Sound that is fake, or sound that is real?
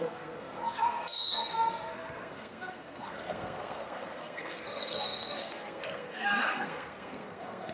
fake